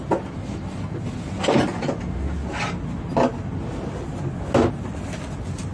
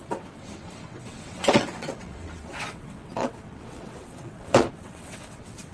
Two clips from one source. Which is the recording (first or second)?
first